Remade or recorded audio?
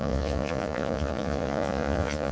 remade